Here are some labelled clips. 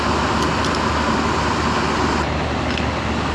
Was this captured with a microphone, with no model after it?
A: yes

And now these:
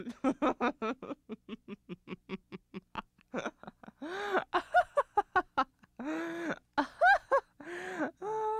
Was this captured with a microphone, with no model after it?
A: yes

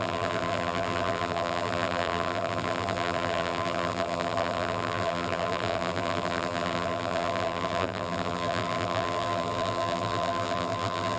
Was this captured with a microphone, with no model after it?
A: no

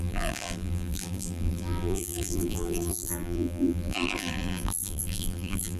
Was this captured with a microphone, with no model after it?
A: no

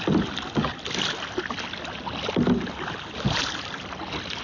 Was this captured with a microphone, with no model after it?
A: yes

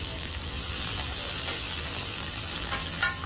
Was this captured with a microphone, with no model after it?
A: no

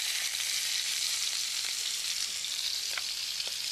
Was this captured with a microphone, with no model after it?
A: no